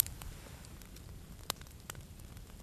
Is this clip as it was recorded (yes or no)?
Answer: no